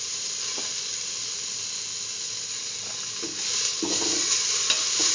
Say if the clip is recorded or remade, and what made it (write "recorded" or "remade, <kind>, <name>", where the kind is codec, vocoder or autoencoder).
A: recorded